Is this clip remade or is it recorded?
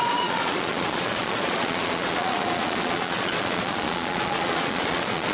remade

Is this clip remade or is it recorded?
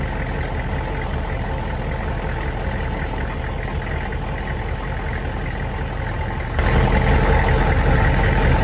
recorded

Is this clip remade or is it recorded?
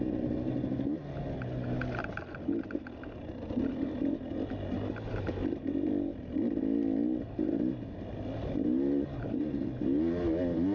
recorded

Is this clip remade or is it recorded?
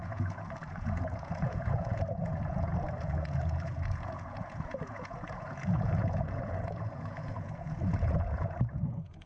remade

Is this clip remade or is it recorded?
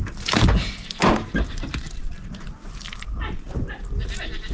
recorded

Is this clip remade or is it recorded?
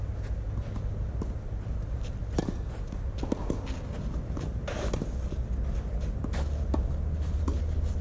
recorded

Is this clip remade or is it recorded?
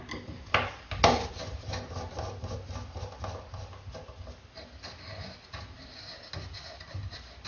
recorded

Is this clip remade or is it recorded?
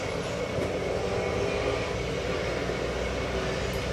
recorded